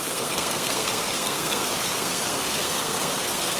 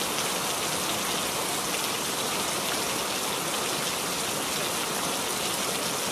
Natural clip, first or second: second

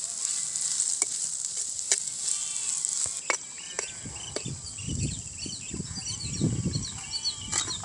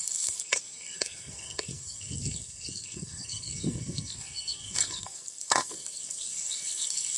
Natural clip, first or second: first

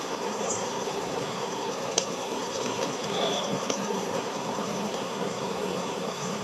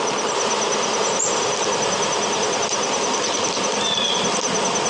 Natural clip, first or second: second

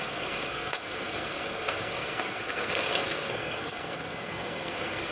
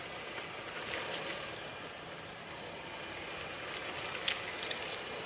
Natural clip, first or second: second